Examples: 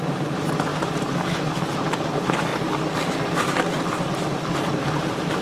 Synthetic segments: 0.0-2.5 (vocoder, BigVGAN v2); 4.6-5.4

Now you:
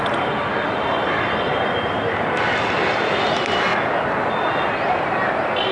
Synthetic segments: 0.0-3.7 (vocoder, BigVGAN v2); 4.9-5.7

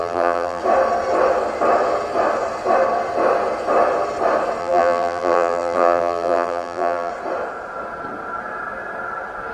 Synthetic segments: 0.0-0.6 (vocoder, BigVGAN v2); 4.6-7.1

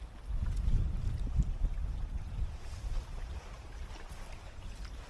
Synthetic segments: 1.7-4.2 (vocoder, BigVGAN v2)

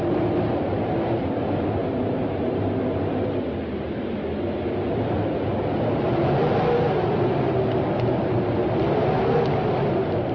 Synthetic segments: 1.8-3.2 (vocoder, BigVGAN v2)